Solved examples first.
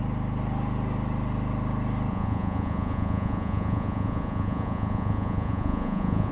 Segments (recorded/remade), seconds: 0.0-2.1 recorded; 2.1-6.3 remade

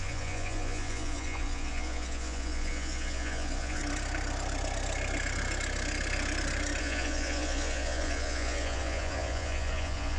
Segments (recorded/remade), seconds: 0.0-3.8 remade; 3.8-6.8 recorded; 6.8-10.2 remade

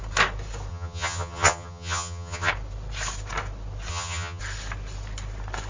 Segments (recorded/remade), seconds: 0.0-0.7 recorded; 0.7-2.5 remade; 2.5-3.9 recorded; 3.9-4.4 remade; 4.4-5.7 recorded

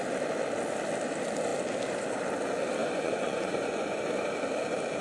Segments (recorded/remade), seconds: 0.0-2.8 recorded; 2.8-4.1 remade; 4.1-5.0 recorded

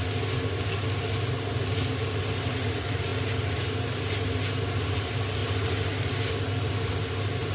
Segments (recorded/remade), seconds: 0.0-7.5 recorded

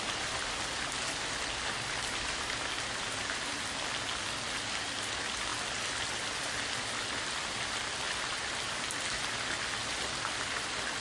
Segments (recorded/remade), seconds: 0.0-11.0 recorded